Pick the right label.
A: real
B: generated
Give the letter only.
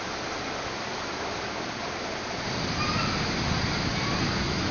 A